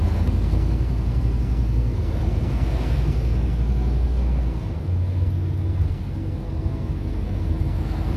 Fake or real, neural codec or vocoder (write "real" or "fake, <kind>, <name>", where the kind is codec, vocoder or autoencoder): fake, codec, SNAC